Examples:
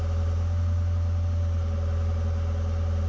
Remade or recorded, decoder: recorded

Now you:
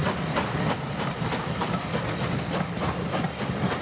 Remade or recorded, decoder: recorded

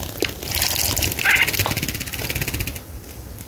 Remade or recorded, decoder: recorded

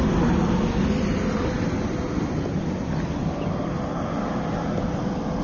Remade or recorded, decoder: recorded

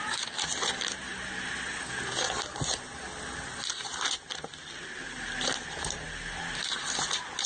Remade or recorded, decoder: recorded